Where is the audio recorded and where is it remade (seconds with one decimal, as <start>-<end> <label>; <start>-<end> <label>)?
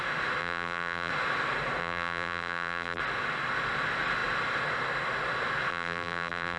0.0-0.4 recorded; 0.4-1.1 remade; 1.1-1.8 recorded; 1.8-3.0 remade; 3.0-5.7 recorded; 5.7-6.6 remade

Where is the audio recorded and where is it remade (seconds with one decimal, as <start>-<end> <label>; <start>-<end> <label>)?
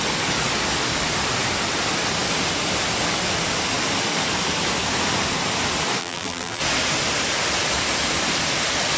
0.0-6.0 recorded; 6.0-6.6 remade; 6.6-9.0 recorded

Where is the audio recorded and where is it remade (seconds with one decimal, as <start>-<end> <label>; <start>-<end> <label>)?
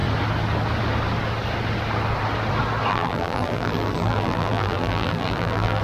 0.0-2.9 recorded; 2.9-5.8 remade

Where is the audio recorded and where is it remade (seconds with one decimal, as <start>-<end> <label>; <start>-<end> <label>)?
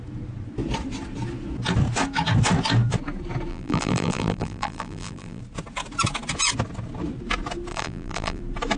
0.0-3.5 recorded; 3.5-5.4 remade; 5.4-7.7 recorded; 7.7-8.4 remade; 8.4-8.8 recorded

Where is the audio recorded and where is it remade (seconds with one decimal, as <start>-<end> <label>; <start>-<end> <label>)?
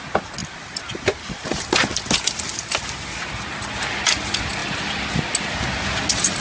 0.0-0.4 recorded; 0.4-3.4 remade; 3.4-6.4 recorded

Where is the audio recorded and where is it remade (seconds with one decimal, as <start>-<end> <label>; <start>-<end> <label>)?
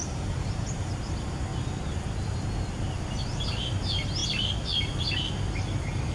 0.0-0.8 remade; 0.8-6.1 recorded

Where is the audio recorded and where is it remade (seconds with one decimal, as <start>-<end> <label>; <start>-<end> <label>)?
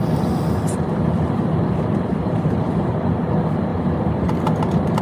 0.0-2.1 recorded; 2.1-2.9 remade; 2.9-3.7 recorded; 3.7-4.3 remade; 4.3-5.0 recorded